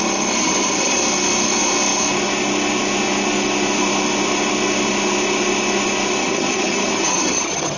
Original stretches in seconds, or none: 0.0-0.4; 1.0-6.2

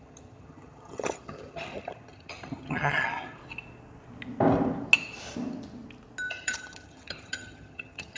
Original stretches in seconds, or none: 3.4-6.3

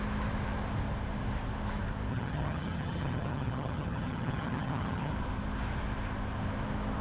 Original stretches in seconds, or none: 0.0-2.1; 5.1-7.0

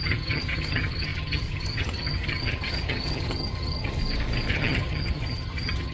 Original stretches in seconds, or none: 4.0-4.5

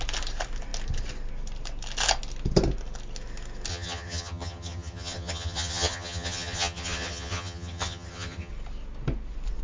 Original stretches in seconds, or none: 0.0-3.7; 8.5-9.6

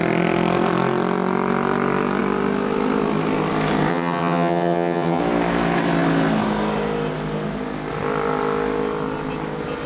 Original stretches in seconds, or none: 0.0-3.9; 5.2-9.9

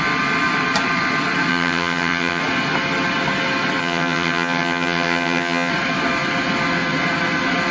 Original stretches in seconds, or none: 0.0-1.5; 2.4-3.8; 5.7-7.7

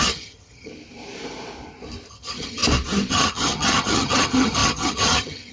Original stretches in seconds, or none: 0.7-2.1; 2.6-3.1